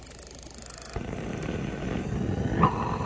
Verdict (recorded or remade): recorded